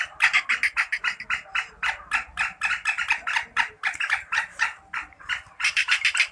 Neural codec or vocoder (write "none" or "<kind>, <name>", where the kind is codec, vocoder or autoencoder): none